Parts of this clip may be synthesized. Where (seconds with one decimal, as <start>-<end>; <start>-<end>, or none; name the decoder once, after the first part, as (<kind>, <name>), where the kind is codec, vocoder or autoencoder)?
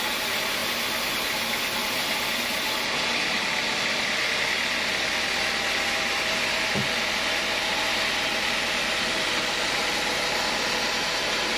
none